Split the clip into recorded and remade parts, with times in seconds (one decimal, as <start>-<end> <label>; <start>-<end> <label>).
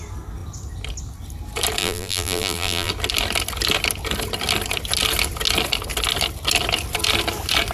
0.0-1.8 recorded; 1.8-2.9 remade; 2.9-7.7 recorded